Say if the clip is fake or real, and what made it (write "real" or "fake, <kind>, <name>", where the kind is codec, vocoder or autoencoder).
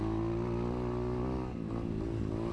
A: real